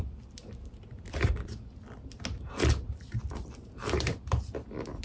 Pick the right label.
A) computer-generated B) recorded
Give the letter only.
A